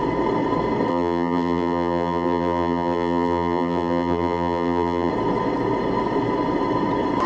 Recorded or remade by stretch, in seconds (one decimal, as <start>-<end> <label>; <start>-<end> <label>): 0.0-0.9 recorded; 0.9-5.1 remade; 5.1-7.3 recorded